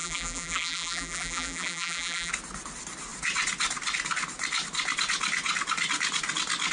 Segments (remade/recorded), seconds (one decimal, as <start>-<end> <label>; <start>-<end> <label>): 0.0-2.3 remade; 2.3-6.7 recorded